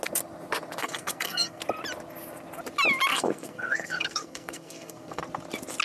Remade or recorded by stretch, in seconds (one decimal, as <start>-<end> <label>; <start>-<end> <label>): 0.0-0.8 recorded; 0.8-1.6 remade; 1.6-3.1 recorded; 3.1-5.2 remade; 5.2-5.8 recorded